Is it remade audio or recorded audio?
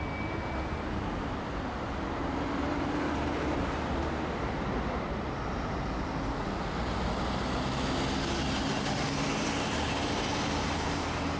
recorded